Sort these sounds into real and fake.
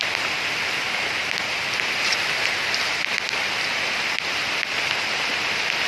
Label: real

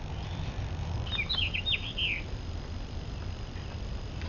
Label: real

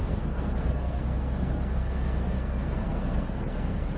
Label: fake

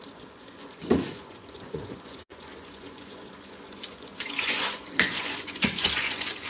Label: fake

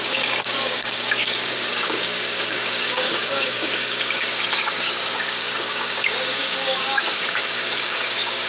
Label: fake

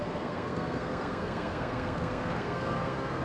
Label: fake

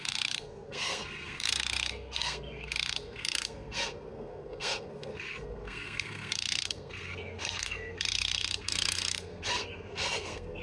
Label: fake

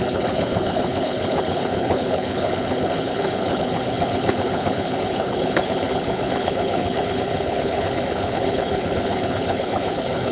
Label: fake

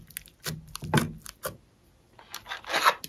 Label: real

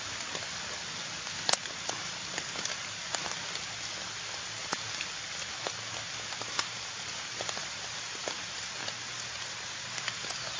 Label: real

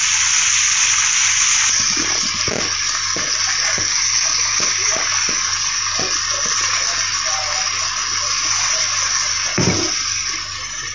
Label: real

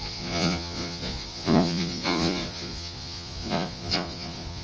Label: fake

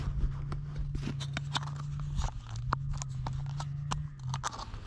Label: real